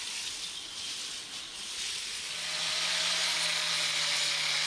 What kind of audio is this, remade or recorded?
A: recorded